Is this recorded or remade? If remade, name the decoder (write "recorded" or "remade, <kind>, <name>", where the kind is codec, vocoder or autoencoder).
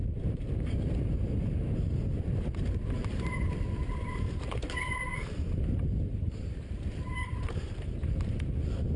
remade, vocoder, BigVGAN v2